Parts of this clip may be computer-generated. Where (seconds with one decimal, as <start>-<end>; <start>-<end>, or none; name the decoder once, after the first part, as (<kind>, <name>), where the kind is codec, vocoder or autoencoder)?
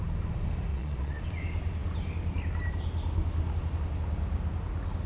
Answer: 0.7-1.2 (vocoder, Vocos)